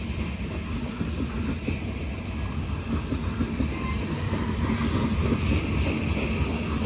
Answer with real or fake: real